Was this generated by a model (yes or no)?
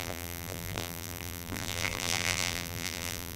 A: yes